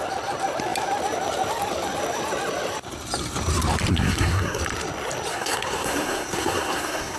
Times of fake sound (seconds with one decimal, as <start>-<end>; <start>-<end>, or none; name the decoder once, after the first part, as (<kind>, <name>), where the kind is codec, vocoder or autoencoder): 3.9-4.6 (codec, SNAC); 5.3-7.2